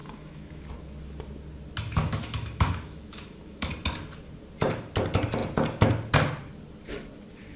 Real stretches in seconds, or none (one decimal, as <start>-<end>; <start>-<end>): 0.6-2.0; 3.7-7.6